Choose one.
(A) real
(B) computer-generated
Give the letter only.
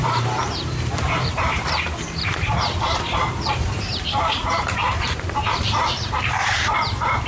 B